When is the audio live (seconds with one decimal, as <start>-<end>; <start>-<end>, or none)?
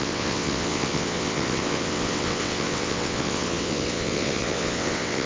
none